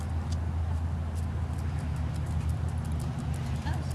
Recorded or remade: recorded